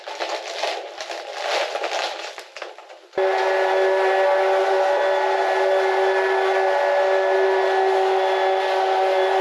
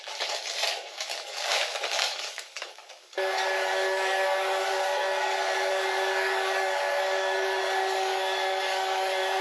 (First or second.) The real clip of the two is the first